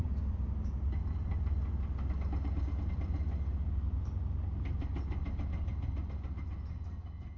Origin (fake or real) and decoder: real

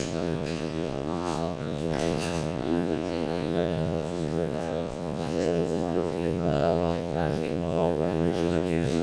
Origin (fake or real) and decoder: fake, vocoder, Vocos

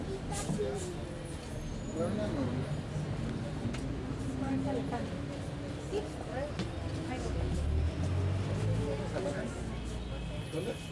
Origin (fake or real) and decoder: real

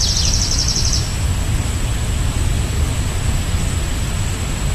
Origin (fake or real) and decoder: real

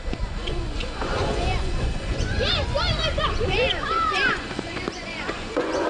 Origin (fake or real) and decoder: fake, vocoder, Vocos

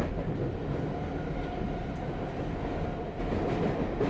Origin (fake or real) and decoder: real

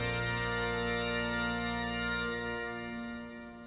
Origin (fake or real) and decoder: real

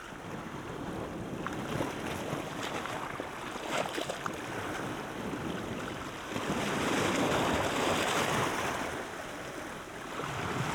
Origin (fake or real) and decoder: real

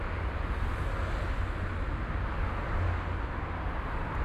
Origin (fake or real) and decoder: real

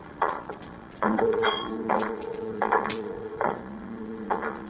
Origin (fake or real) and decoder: fake, vocoder, Vocos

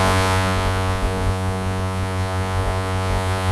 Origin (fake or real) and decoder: fake, vocoder, Vocos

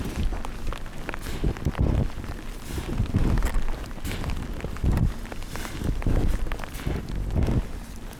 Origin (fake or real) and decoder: real